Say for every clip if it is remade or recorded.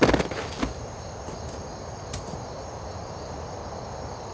recorded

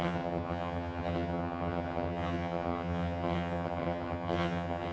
remade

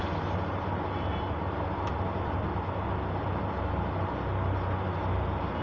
recorded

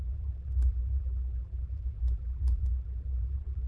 remade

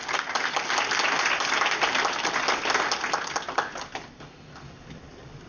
recorded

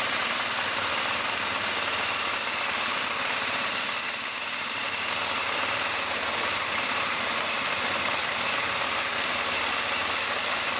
recorded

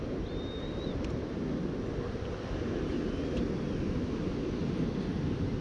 recorded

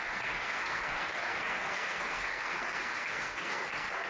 remade